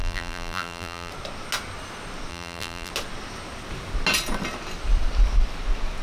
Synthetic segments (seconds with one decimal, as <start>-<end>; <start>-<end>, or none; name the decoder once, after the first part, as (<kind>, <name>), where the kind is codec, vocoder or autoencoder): 0.0-1.1 (vocoder, BigVGAN v2); 2.3-2.9